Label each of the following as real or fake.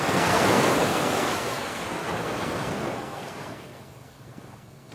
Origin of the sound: fake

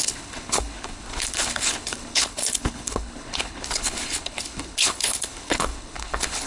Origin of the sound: fake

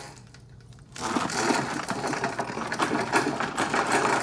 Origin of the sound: real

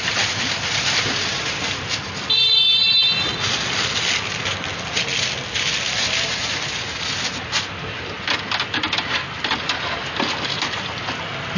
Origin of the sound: real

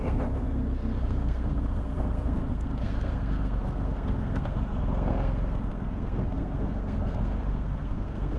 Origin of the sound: fake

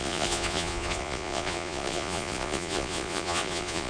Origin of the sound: fake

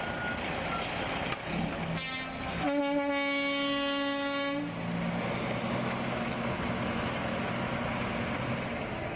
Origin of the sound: real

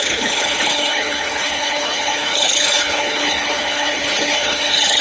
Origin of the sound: fake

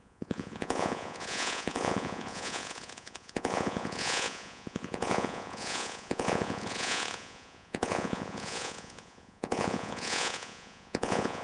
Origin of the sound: fake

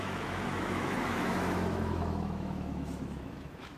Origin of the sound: fake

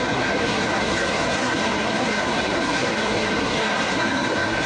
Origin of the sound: fake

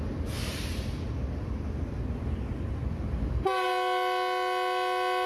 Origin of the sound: real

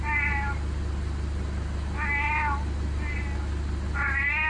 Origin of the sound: real